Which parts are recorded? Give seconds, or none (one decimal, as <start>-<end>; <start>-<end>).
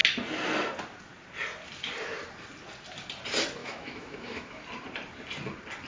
0.0-3.6; 4.6-5.9